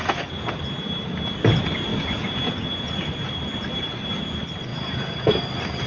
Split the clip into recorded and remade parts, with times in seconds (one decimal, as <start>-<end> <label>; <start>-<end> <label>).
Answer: 0.0-0.6 remade; 0.6-1.9 recorded; 1.9-3.3 remade; 3.3-4.7 recorded; 4.7-5.3 remade; 5.3-5.9 recorded